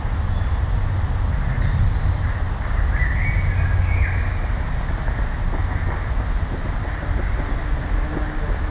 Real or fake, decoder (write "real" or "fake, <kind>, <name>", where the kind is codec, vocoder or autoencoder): real